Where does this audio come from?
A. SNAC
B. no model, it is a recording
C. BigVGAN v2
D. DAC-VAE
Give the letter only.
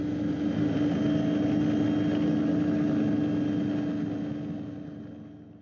B